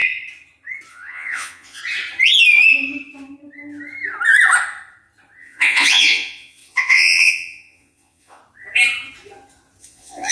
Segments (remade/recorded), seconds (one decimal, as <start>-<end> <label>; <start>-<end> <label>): 0.0-0.9 recorded; 0.9-1.8 remade; 1.8-5.4 recorded; 5.4-8.4 remade; 8.4-9.8 recorded; 9.8-10.3 remade